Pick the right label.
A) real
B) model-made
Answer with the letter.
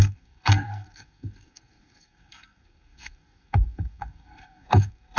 B